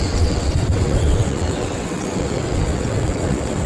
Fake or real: fake